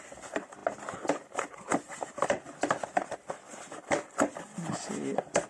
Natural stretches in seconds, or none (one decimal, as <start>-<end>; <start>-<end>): 0.0-5.5